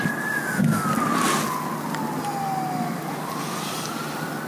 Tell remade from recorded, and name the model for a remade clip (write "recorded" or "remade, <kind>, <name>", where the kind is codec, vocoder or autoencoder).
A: recorded